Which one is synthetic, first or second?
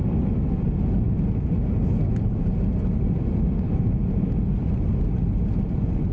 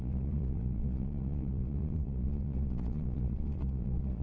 second